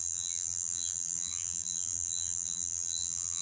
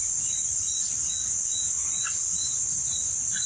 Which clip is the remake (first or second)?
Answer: first